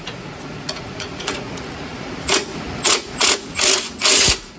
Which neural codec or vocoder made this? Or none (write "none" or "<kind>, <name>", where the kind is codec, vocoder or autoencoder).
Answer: vocoder, Vocos